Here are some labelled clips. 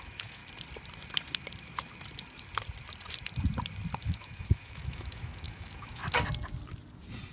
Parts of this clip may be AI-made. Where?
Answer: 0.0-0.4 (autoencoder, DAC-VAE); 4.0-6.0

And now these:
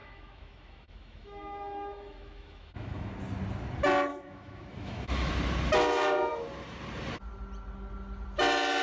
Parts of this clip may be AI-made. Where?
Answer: 0.0-3.1 (autoencoder, DAC-VAE); 4.1-5.3

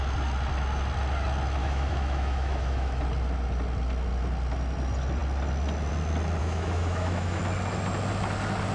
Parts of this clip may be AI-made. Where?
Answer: 1.6-3.0 (autoencoder, DAC-VAE); 6.4-7.4

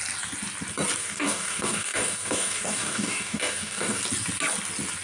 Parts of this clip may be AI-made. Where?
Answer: 1.0-4.0 (codec, DAC)